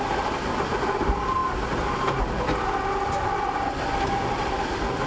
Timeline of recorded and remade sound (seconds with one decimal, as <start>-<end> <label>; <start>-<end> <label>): 0.0-5.1 recorded